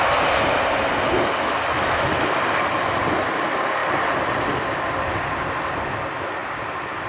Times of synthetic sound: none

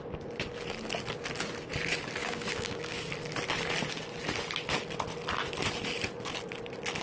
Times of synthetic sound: 2.2-3.1 (codec, DAC)

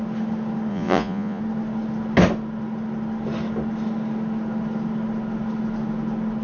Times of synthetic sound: 0.7-1.4 (vocoder, Vocos)